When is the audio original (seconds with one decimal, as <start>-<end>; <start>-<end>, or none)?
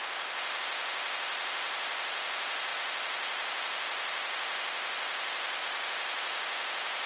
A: 0.0-7.1